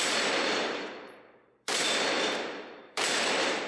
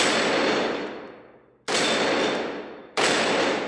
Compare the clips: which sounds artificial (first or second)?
first